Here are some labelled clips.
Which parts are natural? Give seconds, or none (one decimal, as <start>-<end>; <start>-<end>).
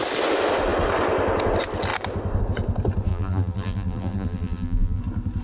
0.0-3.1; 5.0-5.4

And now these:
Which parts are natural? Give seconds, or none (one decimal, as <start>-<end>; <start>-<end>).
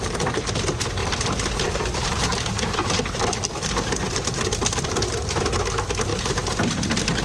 0.0-1.0; 4.1-6.1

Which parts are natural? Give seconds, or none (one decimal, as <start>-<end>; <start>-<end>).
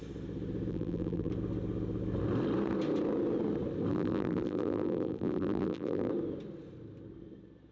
0.0-0.7; 1.3-3.9; 6.1-7.7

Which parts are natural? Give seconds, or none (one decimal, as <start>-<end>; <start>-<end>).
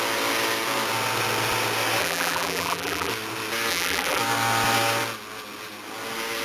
0.0-2.0; 3.1-3.7; 4.2-6.4